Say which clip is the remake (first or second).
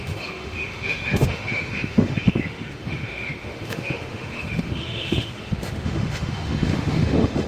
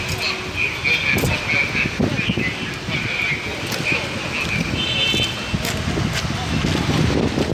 first